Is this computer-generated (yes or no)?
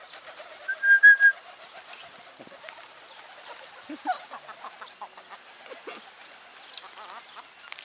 no